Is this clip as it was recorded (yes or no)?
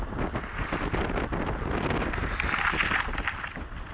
yes